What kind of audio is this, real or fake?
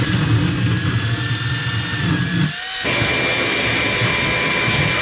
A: real